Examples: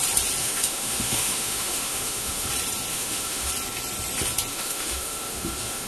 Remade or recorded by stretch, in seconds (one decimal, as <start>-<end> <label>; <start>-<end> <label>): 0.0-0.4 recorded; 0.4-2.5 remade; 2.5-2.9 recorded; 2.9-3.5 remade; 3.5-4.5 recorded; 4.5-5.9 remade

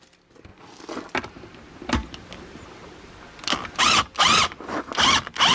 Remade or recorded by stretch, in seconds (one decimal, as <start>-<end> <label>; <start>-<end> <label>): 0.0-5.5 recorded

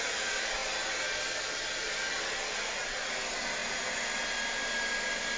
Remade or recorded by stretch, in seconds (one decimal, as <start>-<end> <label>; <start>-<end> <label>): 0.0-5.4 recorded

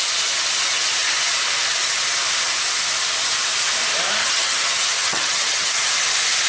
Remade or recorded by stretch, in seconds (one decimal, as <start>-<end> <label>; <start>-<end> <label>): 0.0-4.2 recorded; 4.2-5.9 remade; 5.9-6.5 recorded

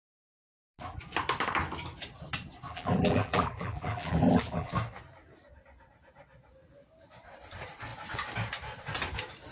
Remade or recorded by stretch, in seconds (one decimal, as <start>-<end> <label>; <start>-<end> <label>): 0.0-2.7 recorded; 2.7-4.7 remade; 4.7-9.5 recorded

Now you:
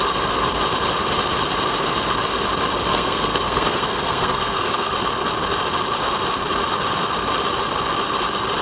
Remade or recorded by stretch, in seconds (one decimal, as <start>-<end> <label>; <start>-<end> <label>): 0.0-2.9 recorded; 2.9-4.9 remade; 4.9-8.6 recorded

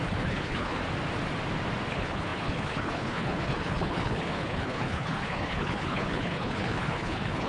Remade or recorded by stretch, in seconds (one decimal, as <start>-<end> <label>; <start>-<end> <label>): 0.0-0.8 remade; 0.8-1.9 recorded; 1.9-7.5 remade